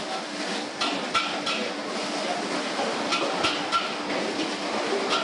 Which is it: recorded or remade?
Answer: recorded